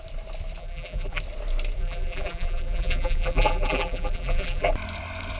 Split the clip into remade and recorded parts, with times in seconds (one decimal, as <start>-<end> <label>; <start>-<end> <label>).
0.0-0.6 recorded; 0.6-1.2 remade; 1.2-1.8 recorded; 1.8-4.7 remade; 4.7-5.4 recorded